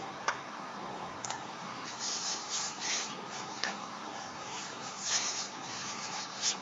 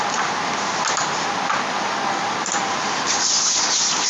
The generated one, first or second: first